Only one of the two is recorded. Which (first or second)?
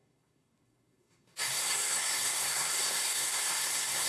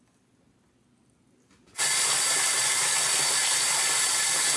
second